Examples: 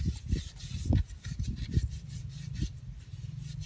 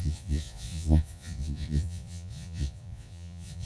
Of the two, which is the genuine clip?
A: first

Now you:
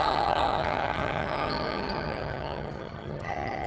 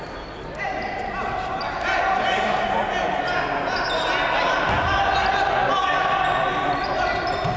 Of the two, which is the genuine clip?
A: second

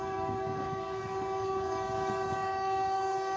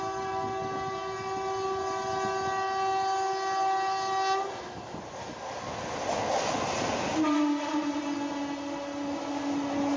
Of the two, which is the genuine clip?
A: second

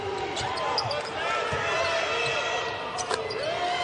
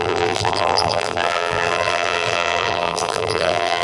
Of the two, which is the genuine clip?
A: first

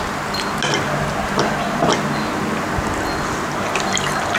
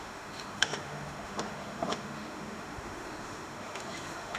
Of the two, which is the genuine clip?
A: first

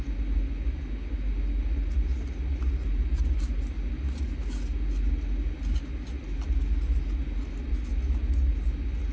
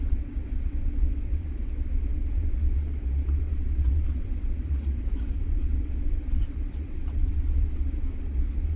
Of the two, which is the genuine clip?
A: first